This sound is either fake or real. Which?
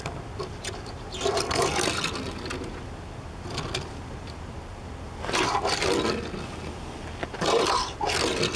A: real